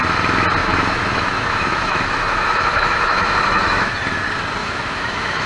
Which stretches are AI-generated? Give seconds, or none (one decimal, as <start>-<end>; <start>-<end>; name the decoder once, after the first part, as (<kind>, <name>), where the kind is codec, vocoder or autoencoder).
0.6-3.9 (autoencoder, DAC-VAE); 4.6-5.5